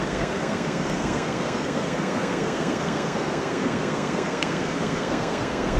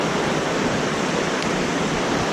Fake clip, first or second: first